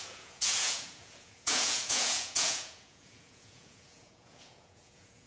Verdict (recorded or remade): remade